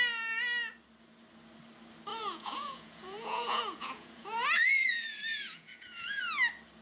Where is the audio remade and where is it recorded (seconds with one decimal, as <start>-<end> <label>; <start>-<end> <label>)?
0.0-2.1 recorded; 2.1-6.2 remade; 6.2-6.8 recorded

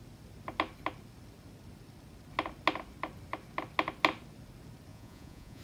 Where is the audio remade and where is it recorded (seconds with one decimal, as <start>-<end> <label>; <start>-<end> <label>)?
0.0-4.9 recorded; 4.9-5.6 remade

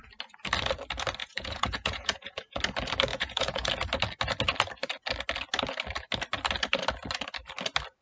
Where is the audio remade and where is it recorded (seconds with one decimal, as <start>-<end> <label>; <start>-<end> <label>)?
0.0-1.2 recorded; 1.2-2.6 remade; 2.6-3.1 recorded; 3.1-3.7 remade; 3.7-8.0 recorded

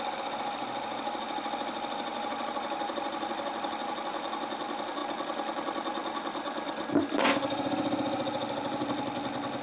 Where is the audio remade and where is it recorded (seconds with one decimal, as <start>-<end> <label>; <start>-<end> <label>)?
0.0-9.6 recorded

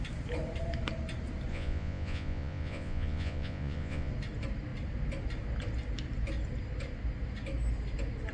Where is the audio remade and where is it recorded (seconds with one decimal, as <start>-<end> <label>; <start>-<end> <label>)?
0.0-1.5 recorded; 1.5-4.1 remade; 4.1-8.3 recorded

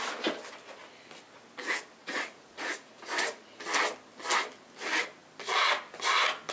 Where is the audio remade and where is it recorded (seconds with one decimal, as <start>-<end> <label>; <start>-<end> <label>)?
0.0-2.0 recorded; 2.0-3.6 remade; 3.6-6.5 recorded

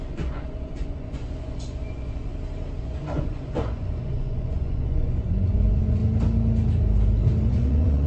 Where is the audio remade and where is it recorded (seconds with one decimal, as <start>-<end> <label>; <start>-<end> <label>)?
0.0-2.3 remade; 2.3-2.8 recorded; 2.8-6.0 remade; 6.0-7.4 recorded; 7.4-8.1 remade

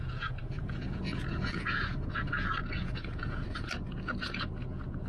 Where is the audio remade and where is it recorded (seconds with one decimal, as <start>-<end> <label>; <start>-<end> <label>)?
0.0-5.1 remade